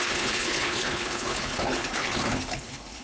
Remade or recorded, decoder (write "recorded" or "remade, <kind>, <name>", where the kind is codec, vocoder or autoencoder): remade, codec, HILCodec